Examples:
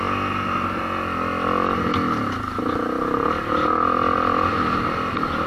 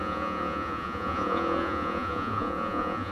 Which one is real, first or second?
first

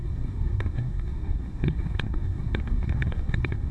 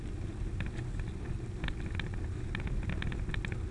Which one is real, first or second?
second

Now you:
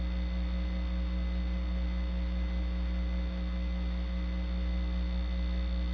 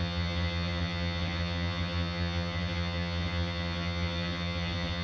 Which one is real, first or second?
first